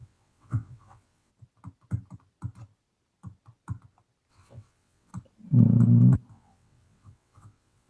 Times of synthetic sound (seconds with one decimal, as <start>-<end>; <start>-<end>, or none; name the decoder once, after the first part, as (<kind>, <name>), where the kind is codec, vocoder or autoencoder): 0.0-1.3 (vocoder, WaveNeXt); 4.3-5.1; 6.3-7.9